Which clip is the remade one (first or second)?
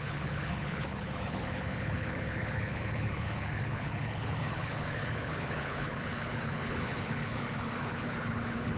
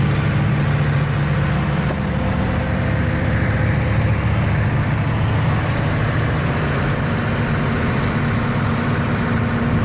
first